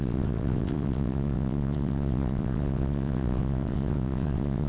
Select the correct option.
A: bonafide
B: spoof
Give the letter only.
B